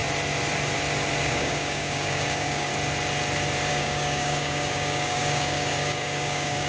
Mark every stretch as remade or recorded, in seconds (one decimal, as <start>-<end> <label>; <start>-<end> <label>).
0.0-1.2 recorded; 1.2-2.7 remade; 2.7-3.7 recorded; 3.7-6.7 remade